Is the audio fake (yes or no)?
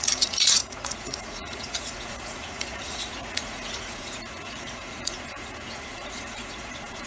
yes